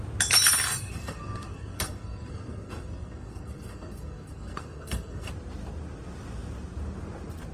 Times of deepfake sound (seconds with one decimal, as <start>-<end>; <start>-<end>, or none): 0.8-5.3